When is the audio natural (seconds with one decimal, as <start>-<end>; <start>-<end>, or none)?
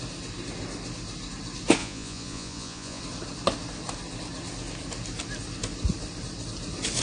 0.0-1.8; 3.0-7.0